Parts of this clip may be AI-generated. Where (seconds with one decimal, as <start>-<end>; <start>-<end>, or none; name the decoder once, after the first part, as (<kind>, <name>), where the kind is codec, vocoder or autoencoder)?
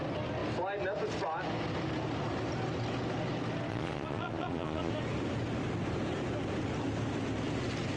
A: 3.7-4.9 (vocoder, Vocos)